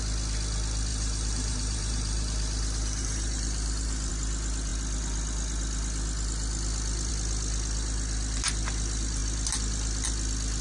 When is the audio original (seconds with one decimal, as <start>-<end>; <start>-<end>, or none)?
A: 0.0-0.9; 4.1-10.6

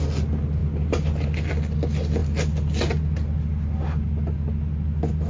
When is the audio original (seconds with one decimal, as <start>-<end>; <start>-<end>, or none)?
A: 0.0-5.3

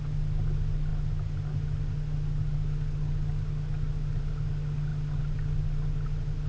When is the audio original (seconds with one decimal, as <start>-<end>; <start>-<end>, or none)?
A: 0.0-6.5

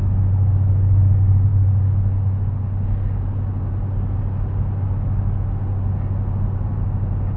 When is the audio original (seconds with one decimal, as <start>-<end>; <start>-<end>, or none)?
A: 0.0-7.4

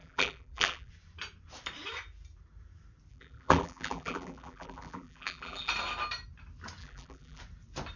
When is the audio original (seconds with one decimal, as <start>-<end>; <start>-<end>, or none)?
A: 0.9-3.1; 5.7-6.8; 7.4-8.0

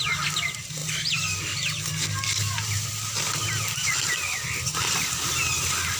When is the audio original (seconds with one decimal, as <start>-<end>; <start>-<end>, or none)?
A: 0.0-6.0

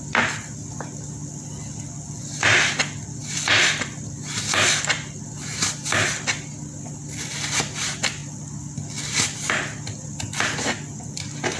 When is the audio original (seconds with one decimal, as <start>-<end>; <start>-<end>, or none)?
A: 0.0-3.2; 7.3-11.6